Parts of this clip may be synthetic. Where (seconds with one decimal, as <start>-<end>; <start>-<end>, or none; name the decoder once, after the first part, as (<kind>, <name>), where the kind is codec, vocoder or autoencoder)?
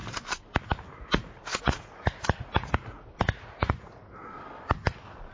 1.0-4.2 (vocoder, Vocos)